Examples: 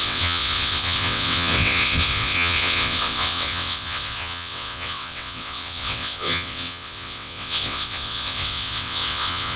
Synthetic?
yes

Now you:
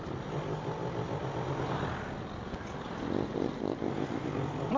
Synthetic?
no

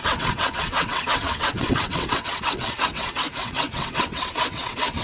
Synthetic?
yes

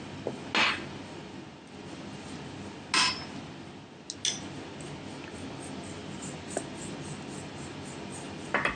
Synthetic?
no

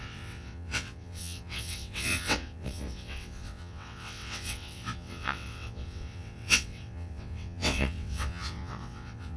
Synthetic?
yes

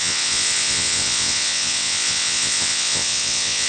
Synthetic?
yes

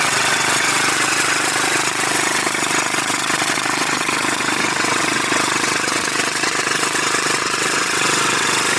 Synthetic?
yes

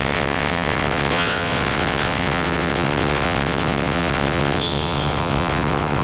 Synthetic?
yes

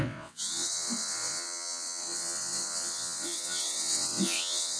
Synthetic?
yes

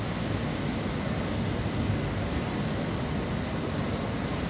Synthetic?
no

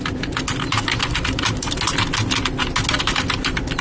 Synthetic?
no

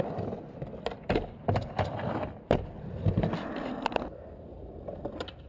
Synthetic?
no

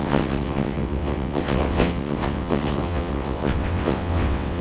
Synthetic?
yes